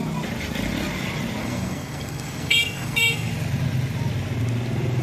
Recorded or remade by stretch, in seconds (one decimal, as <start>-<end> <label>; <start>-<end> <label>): 0.0-1.4 recorded; 1.4-3.3 remade; 3.3-5.0 recorded